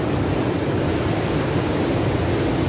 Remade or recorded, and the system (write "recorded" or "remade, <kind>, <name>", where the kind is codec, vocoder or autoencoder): recorded